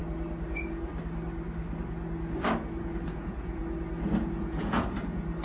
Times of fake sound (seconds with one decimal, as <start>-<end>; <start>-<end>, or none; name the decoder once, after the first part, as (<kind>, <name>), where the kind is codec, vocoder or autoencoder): 0.5-0.9 (vocoder, Vocos); 2.8-3.6; 4.2-5.4